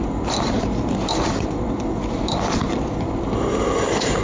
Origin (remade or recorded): remade